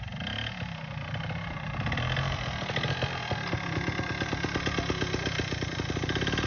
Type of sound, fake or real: real